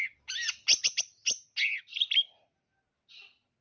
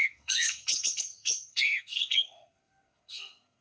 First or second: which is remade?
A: second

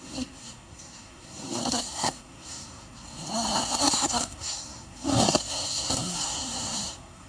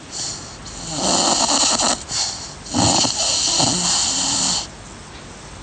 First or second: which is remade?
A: first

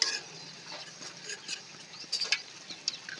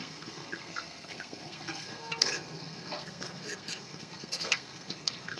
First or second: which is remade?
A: second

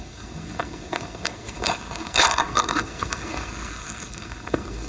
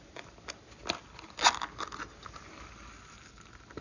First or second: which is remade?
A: first